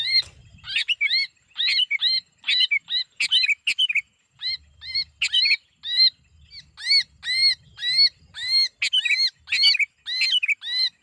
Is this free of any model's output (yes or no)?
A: yes